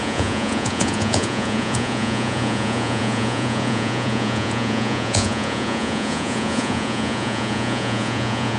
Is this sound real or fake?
fake